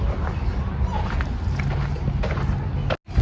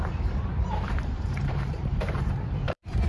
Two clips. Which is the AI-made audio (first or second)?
second